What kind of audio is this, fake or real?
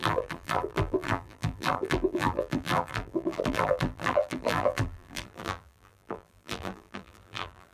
fake